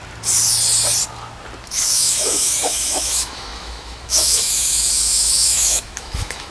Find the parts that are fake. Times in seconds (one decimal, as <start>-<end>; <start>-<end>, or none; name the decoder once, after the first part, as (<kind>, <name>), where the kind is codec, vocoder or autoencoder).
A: 1.7-6.5 (autoencoder, DAC-VAE)